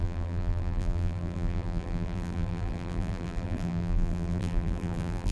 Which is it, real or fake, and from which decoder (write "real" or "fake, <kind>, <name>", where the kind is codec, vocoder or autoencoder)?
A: fake, vocoder, BigVGAN v2